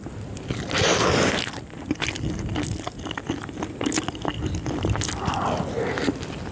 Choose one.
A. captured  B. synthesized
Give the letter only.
A